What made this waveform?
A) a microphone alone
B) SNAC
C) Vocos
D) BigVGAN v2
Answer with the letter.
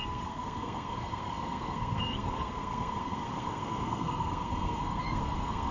B